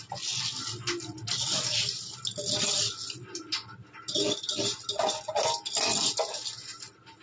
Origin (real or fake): real